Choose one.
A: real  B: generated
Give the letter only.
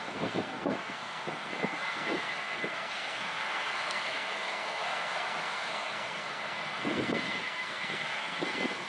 B